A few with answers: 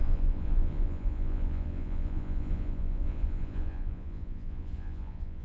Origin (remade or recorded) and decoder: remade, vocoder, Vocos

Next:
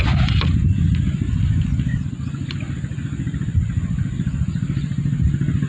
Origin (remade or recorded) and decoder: recorded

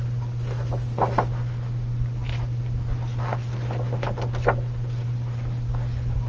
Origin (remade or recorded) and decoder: recorded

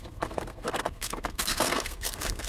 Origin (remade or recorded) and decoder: remade, codec, SNAC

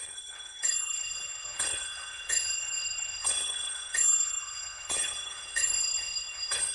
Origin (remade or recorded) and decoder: remade, codec, HILCodec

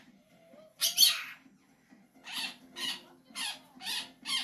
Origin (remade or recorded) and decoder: recorded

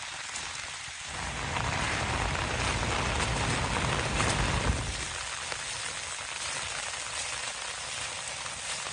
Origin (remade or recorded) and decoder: recorded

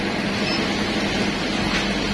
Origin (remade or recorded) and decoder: recorded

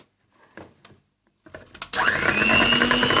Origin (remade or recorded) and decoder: recorded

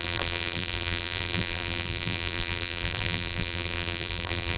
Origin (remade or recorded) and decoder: remade, vocoder, BigVGAN v2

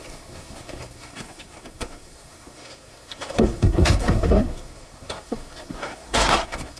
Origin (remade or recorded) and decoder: remade, codec, SNAC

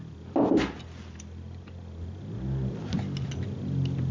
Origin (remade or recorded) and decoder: recorded